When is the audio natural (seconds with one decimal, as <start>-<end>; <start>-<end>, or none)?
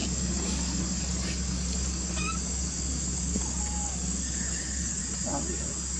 5.0-6.0